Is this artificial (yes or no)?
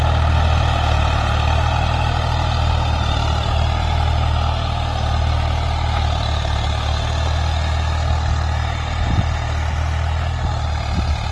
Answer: no